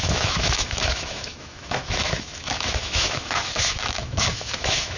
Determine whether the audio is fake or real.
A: fake